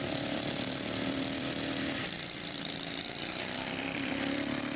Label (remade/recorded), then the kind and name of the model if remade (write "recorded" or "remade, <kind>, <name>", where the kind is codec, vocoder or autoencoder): remade, vocoder, BigVGAN v2